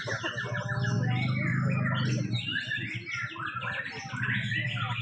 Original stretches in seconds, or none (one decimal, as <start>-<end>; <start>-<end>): 0.0-5.0